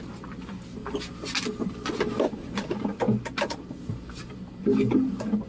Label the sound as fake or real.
real